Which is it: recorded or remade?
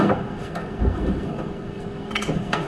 remade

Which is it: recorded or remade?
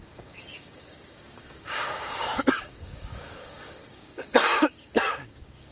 remade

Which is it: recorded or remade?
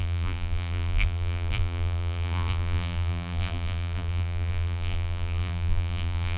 remade